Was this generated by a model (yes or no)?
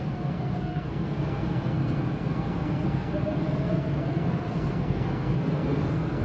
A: yes